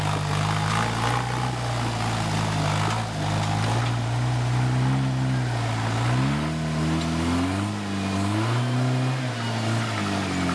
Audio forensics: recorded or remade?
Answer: recorded